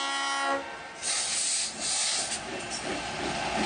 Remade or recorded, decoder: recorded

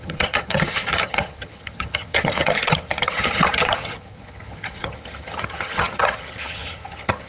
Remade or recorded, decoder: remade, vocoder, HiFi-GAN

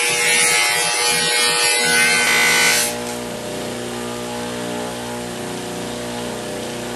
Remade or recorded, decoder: recorded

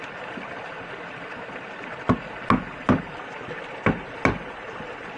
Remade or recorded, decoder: recorded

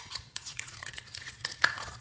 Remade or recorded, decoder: remade, vocoder, Vocos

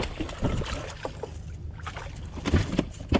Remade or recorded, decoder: recorded